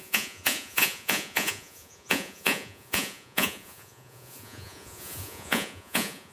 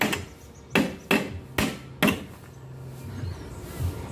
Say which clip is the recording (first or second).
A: second